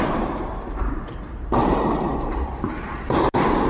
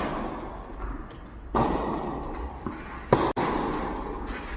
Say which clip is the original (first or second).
second